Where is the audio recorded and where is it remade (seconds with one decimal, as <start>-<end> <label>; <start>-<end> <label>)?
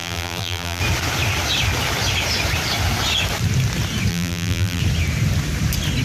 0.0-0.8 remade; 0.8-4.1 recorded; 4.1-4.8 remade; 4.8-6.0 recorded